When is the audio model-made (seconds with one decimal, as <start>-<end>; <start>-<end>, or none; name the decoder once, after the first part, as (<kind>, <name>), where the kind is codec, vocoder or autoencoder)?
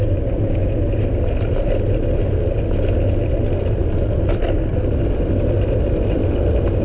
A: none